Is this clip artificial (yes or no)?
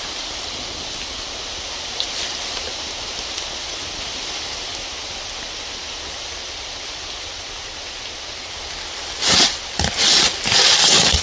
no